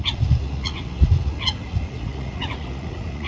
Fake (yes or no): yes